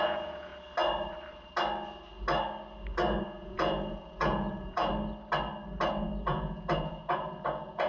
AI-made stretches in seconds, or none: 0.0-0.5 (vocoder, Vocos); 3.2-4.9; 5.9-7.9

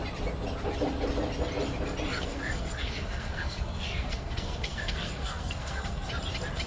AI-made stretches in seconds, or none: 2.1-6.1 (codec, SNAC)

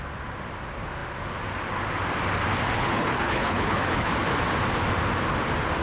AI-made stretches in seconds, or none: 2.8-4.1 (codec, HILCodec)

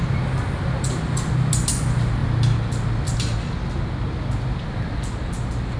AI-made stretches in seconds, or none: none